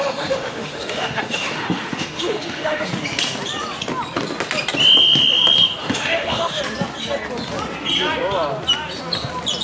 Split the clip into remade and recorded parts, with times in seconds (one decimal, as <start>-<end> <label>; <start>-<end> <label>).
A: 0.0-2.9 remade; 2.9-5.8 recorded; 5.8-6.6 remade; 6.6-9.6 recorded